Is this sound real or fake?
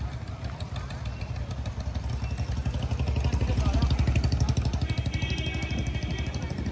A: real